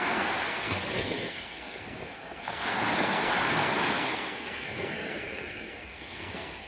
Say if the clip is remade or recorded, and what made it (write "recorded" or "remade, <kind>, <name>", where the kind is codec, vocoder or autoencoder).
remade, codec, SNAC